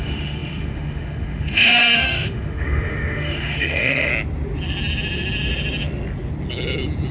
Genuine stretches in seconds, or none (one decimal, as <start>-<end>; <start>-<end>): 4.1-7.1